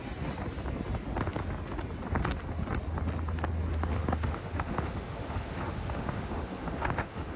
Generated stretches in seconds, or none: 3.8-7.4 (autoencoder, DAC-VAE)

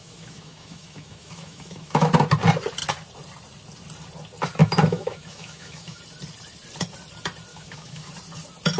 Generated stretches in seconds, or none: 0.0-2.1 (autoencoder, DAC-VAE); 4.6-6.0; 7.5-8.1